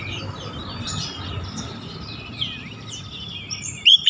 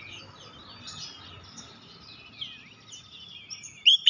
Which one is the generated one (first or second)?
first